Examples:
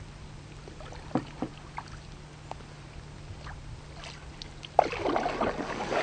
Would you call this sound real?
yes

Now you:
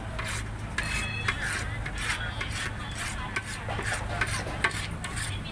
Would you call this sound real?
yes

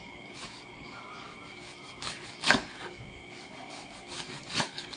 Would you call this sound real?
no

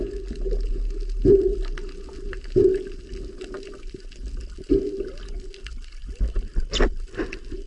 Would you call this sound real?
yes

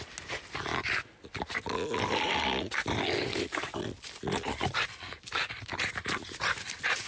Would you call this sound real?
yes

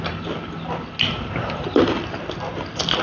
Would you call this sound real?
yes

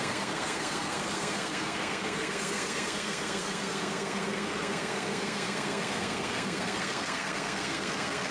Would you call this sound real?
no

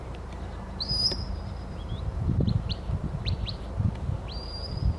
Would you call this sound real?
no